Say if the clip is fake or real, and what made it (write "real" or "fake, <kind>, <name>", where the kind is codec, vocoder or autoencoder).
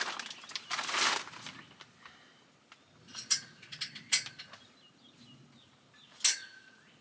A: real